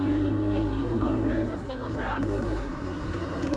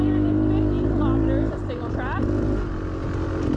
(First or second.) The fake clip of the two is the first